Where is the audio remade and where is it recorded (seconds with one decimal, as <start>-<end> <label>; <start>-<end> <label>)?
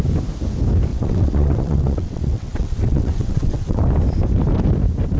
0.0-0.9 recorded; 0.9-3.8 remade; 3.8-5.2 recorded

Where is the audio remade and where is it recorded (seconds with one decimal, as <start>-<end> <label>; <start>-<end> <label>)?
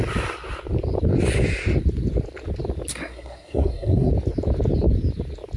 0.0-2.9 recorded; 2.9-4.1 remade; 4.1-5.6 recorded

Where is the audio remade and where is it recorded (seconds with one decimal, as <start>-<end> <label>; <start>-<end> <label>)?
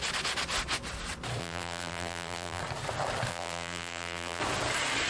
0.0-1.4 recorded; 1.4-2.6 remade; 2.6-3.3 recorded; 3.3-4.4 remade; 4.4-5.1 recorded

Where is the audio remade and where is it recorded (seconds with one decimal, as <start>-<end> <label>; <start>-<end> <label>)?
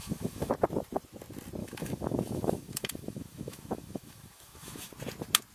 0.0-0.5 remade; 0.5-1.6 recorded; 1.6-4.9 remade; 4.9-5.5 recorded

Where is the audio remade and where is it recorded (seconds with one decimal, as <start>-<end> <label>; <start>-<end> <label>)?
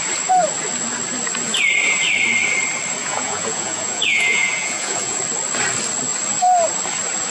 0.0-3.0 recorded; 3.0-5.2 remade; 5.2-7.3 recorded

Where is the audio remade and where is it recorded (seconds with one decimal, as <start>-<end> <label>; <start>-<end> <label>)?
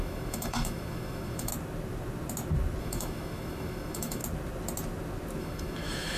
0.0-1.5 remade; 1.5-2.8 recorded; 2.8-4.2 remade; 4.2-5.4 recorded; 5.4-6.2 remade